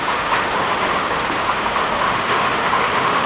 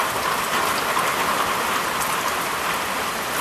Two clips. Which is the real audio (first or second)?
second